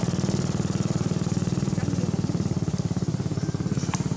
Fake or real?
real